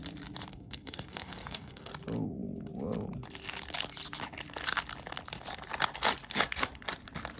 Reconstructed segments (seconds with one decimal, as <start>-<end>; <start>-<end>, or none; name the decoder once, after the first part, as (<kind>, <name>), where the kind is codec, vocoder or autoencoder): 0.5-1.9 (codec, SNAC)